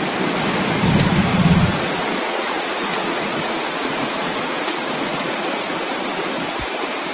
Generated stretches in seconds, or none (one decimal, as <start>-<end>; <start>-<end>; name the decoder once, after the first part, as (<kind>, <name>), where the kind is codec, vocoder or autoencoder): 1.3-5.6 (vocoder, Vocos)